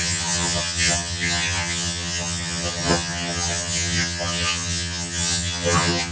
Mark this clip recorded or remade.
remade